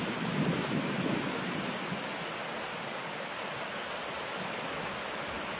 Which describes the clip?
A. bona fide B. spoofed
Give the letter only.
A